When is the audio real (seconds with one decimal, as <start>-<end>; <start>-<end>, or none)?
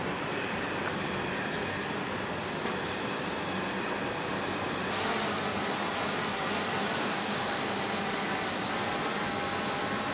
0.0-7.0; 7.6-10.1